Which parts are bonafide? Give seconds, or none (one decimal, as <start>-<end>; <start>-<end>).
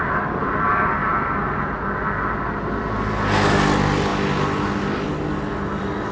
0.0-6.1